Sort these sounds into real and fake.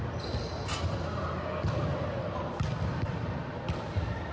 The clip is real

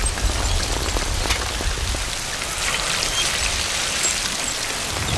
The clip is real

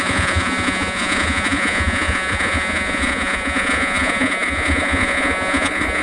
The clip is fake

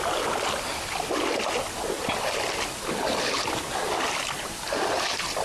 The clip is real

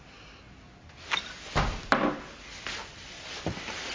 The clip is real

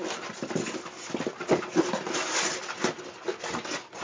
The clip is real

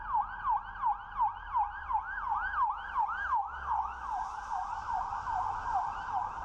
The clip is real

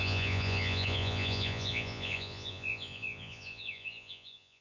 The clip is fake